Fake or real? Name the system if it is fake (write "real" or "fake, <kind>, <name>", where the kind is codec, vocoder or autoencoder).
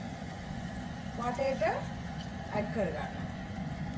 fake, vocoder, Vocos